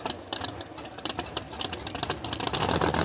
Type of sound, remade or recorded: recorded